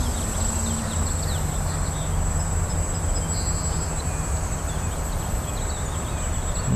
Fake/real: real